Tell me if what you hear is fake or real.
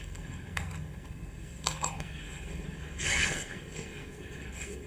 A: fake